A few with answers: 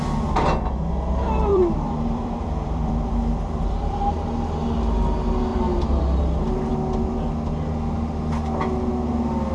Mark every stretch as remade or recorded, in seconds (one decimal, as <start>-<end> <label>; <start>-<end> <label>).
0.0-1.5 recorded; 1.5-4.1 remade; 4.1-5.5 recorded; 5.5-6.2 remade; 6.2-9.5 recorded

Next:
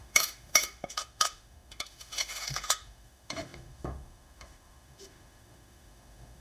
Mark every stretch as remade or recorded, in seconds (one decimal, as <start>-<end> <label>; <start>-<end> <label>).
0.0-6.4 remade

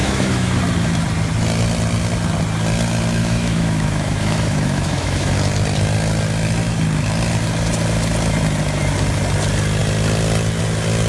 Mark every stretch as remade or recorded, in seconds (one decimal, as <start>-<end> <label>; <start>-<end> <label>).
0.0-0.6 remade; 0.6-3.2 recorded; 3.2-5.3 remade; 5.3-11.1 recorded

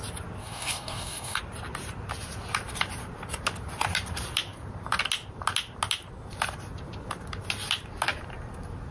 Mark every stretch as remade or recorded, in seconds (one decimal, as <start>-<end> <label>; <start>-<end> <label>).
0.0-0.4 recorded; 0.4-1.4 remade; 1.4-8.9 recorded

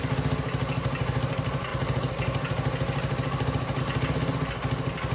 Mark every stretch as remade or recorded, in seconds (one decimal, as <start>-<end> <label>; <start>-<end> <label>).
0.0-5.1 recorded

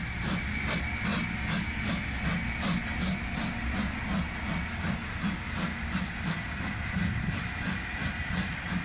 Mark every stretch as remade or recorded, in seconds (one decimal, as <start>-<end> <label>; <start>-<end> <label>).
0.0-8.8 recorded